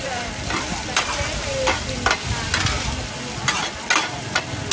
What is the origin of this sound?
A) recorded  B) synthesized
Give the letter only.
A